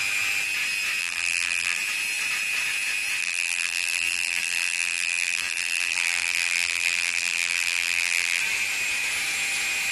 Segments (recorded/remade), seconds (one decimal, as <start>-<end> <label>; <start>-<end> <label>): 0.0-1.0 recorded; 1.0-1.8 remade; 1.8-3.2 recorded; 3.2-8.4 remade; 8.4-9.9 recorded